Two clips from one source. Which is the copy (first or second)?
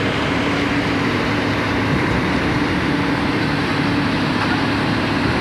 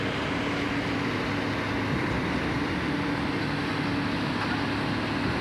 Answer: first